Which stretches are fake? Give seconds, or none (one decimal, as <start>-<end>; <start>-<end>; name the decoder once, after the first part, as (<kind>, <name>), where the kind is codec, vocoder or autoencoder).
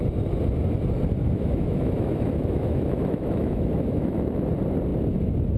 1.2-4.4 (autoencoder, DAC-VAE)